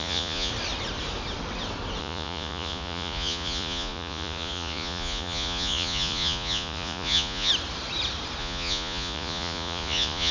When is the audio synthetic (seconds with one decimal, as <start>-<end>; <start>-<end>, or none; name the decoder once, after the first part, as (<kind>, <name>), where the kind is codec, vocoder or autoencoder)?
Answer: 0.0-0.5 (vocoder, Vocos); 2.0-7.5; 8.4-10.3